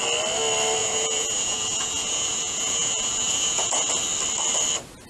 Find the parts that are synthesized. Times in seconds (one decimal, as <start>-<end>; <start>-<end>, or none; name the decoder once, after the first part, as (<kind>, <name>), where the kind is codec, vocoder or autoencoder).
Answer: 0.8-3.9 (vocoder, Vocos)